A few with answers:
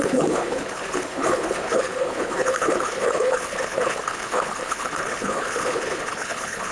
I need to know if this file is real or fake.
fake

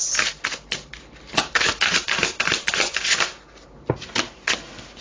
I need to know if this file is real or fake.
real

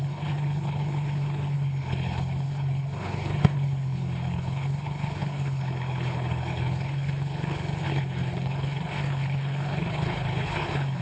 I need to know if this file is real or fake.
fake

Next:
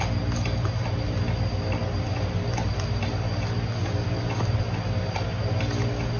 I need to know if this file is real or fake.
real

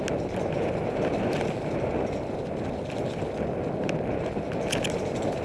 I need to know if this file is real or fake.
real